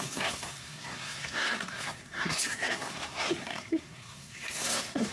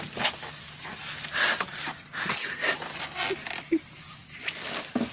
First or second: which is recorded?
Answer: second